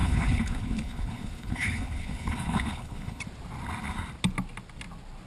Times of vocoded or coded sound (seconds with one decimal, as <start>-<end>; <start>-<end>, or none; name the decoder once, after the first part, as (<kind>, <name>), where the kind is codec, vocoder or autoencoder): 0.0-3.2 (codec, HILCodec)